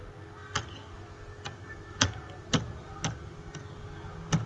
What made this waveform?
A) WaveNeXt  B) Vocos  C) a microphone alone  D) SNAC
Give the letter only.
C